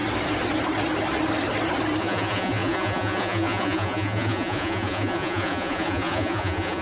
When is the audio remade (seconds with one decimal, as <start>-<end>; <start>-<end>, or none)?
2.0-6.8